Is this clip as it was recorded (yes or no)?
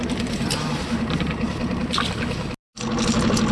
yes